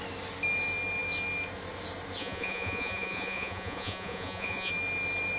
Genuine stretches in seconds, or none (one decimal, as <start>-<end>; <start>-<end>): 0.0-2.2; 4.7-5.4